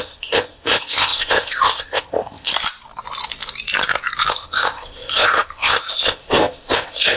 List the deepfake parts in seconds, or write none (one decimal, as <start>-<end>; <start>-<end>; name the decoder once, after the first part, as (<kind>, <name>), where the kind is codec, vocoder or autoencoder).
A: 0.0-2.5 (codec, ZipCodec); 4.3-7.2